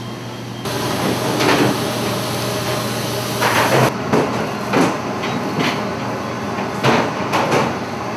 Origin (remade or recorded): recorded